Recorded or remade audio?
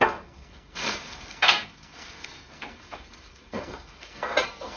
remade